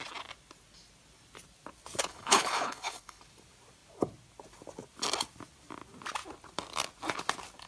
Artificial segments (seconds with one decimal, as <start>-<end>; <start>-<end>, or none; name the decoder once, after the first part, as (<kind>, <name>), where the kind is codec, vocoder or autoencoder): 2.1-3.2 (codec, HILCodec)